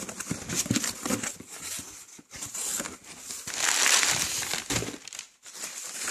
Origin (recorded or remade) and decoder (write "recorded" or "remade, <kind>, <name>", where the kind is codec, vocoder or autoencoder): recorded